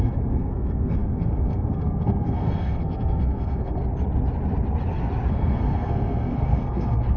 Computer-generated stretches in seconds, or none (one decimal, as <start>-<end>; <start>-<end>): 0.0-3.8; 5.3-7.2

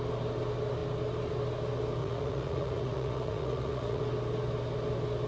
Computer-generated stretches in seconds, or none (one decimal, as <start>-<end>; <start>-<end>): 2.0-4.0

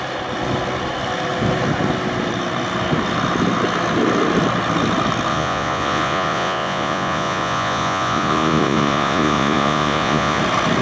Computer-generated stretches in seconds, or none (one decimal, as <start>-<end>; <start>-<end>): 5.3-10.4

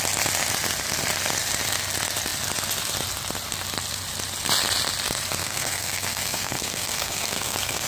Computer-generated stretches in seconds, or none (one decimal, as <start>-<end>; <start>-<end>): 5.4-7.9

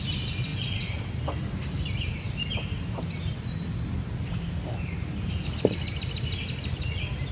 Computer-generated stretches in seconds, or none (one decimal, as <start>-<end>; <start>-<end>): none